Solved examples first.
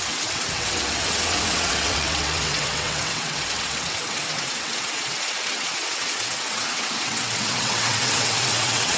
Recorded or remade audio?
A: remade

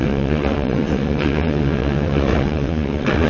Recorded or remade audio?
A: remade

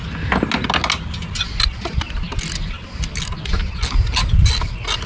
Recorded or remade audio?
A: recorded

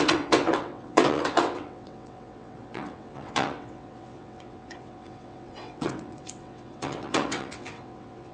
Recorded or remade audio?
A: remade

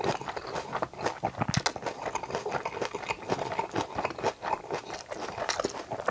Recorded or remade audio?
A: recorded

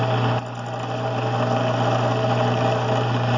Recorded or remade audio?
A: recorded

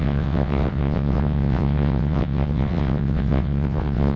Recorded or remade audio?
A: remade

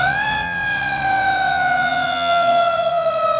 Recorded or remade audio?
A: remade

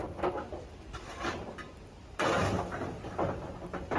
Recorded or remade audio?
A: recorded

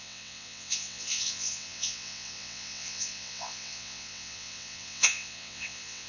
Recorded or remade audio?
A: remade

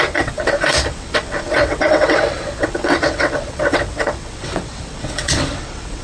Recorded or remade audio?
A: remade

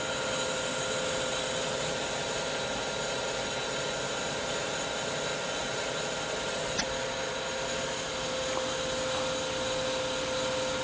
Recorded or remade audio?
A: recorded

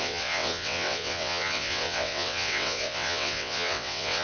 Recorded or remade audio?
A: remade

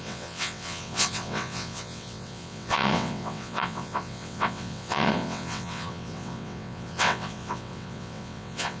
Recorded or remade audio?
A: remade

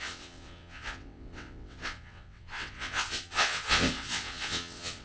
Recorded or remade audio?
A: remade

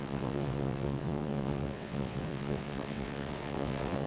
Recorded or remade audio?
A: remade